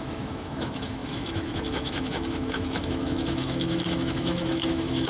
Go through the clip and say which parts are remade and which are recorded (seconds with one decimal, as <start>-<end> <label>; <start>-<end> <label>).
0.0-5.1 remade